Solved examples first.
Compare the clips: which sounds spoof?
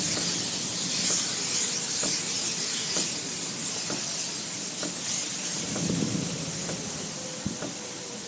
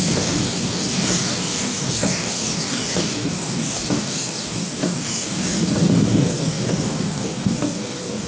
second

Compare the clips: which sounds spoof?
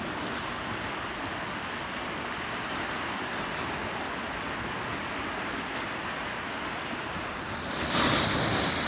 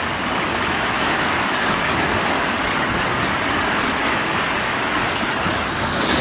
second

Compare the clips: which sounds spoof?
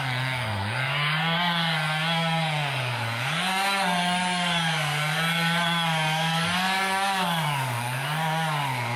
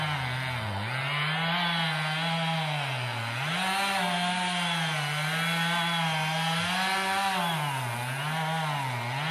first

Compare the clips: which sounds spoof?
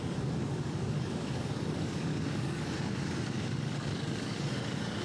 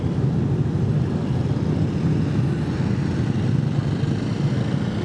first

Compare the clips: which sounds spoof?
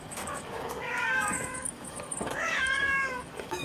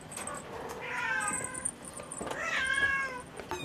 first